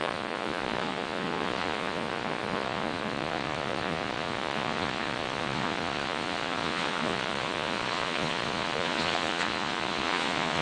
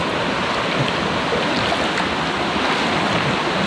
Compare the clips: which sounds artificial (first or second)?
first